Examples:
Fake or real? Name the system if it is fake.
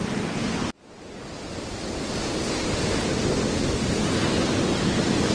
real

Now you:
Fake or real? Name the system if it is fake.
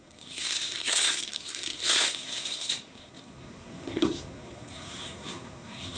fake, codec, SNAC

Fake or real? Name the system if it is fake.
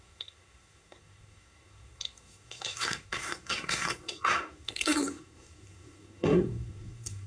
fake, codec, SNAC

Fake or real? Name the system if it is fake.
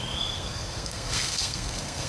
fake, codec, SNAC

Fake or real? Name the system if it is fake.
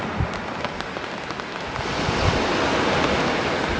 real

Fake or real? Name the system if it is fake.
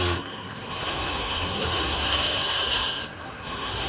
fake, codec, SNAC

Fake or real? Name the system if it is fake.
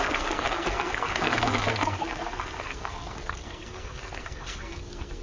fake, codec, SNAC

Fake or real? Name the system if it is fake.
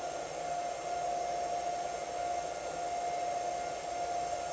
real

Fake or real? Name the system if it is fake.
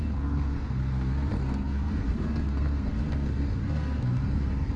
fake, codec, SNAC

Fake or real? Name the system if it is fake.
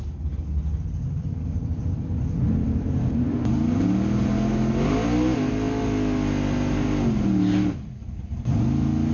real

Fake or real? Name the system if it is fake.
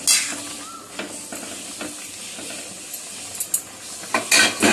real